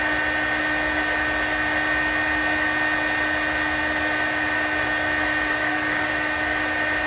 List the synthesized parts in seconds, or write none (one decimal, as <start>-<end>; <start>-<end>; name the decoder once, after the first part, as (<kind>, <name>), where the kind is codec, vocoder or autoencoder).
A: 5.5-6.1 (codec, DAC)